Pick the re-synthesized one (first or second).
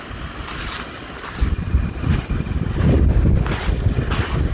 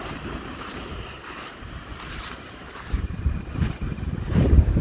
second